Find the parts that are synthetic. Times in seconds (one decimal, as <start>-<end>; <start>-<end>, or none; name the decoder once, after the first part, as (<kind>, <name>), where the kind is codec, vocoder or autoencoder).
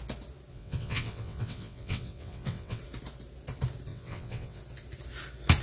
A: 0.5-2.8 (vocoder, WaveNeXt); 3.9-4.6